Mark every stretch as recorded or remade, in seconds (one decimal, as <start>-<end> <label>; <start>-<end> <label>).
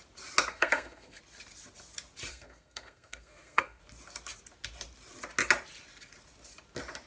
0.0-0.5 recorded; 0.5-1.2 remade; 1.2-2.3 recorded; 2.3-3.8 remade; 3.8-7.1 recorded